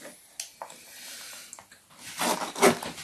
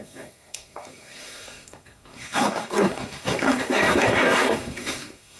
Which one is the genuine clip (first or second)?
first